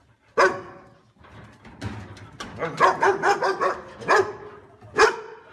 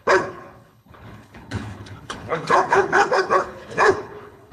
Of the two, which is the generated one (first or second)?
second